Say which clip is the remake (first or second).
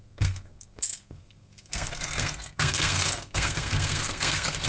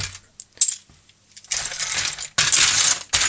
first